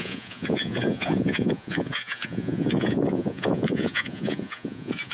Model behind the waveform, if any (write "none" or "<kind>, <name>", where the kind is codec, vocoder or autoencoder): vocoder, Vocos